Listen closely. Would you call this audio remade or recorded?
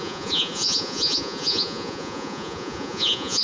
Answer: remade